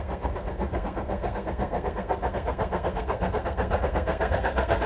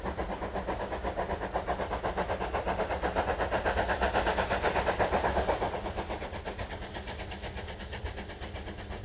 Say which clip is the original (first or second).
second